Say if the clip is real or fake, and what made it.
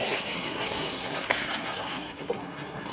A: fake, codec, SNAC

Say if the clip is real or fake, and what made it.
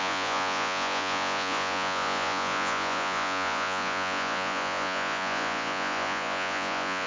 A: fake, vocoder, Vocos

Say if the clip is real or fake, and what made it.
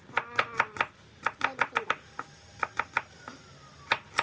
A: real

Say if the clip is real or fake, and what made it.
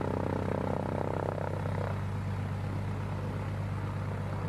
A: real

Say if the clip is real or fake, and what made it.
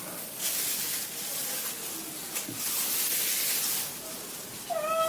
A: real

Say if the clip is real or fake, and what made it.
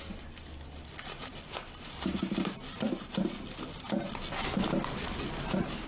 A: real